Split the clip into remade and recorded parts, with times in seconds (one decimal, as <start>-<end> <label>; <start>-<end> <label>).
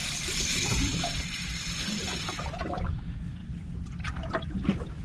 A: 0.0-3.0 remade; 3.0-3.4 recorded; 3.4-4.6 remade; 4.6-5.0 recorded